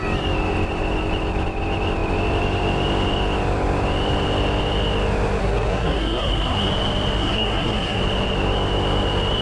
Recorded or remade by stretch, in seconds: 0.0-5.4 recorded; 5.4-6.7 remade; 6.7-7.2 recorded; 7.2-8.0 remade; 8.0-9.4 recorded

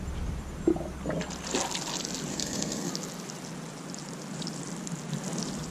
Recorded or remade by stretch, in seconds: 0.0-2.3 recorded; 2.3-2.9 remade; 2.9-5.7 recorded

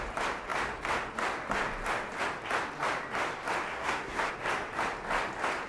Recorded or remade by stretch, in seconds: 0.0-3.7 recorded; 3.7-4.3 remade; 4.3-5.7 recorded

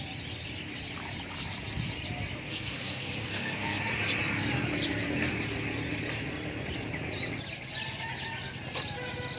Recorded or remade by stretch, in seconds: 0.0-2.5 recorded; 2.5-3.8 remade; 3.8-9.4 recorded

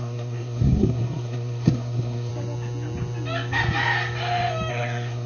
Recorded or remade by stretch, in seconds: 0.0-2.3 remade; 2.3-4.7 recorded; 4.7-5.3 remade

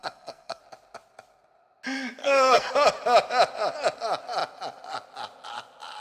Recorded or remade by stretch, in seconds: 0.0-0.6 remade; 0.6-2.2 recorded; 2.2-2.7 remade; 2.7-6.0 recorded